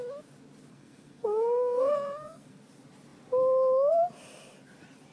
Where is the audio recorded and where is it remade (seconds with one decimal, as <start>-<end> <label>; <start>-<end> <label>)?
0.0-0.7 recorded; 0.7-2.6 remade; 2.6-5.1 recorded